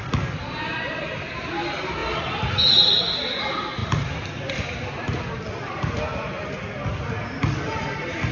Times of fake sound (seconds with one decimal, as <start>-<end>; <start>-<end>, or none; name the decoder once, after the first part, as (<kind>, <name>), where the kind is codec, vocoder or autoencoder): none